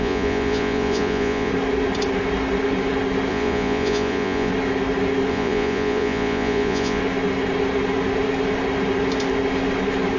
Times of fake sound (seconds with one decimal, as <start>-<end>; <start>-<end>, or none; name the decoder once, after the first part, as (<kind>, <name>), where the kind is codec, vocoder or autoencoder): 0.0-1.5 (vocoder, Vocos); 3.3-4.5; 5.3-7.0

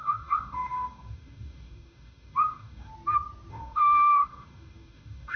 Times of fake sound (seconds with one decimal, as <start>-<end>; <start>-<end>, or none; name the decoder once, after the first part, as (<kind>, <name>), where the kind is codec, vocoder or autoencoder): 0.0-2.9 (codec, DAC); 3.5-5.4

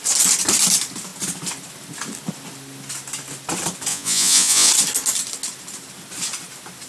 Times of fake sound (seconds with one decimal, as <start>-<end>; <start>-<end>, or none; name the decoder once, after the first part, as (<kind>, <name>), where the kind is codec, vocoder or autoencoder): 3.9-4.7 (vocoder, Vocos)

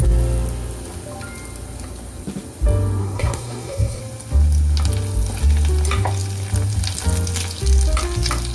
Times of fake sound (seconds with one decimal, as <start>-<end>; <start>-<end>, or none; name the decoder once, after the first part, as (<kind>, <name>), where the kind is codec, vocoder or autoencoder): 3.0-4.0 (codec, SNAC)

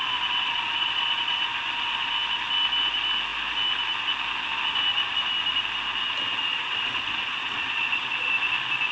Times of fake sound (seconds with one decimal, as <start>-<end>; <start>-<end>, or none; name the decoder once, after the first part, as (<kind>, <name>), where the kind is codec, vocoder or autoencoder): 0.4-2.1 (vocoder, Vocos); 6.5-8.3

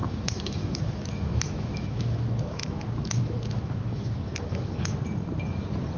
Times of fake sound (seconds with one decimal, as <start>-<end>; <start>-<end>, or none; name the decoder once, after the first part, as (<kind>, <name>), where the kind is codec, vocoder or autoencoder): 0.0-5.0 (autoencoder, DAC-VAE)

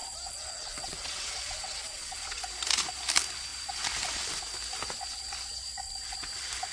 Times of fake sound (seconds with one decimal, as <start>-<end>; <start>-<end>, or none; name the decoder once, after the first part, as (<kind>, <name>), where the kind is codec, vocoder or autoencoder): 0.0-2.4 (vocoder, WaveNeXt)